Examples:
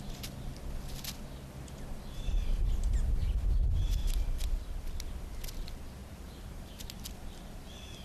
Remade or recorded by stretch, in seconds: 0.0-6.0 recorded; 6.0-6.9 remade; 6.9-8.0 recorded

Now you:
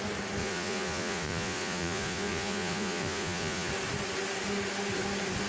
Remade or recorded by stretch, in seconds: 0.0-0.4 recorded; 0.4-3.7 remade; 3.7-5.5 recorded

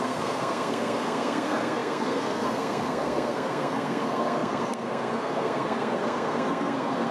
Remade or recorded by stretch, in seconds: 0.0-7.1 remade